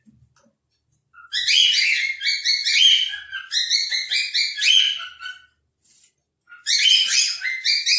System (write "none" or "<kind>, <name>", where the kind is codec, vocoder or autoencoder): none